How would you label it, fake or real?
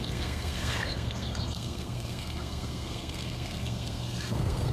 fake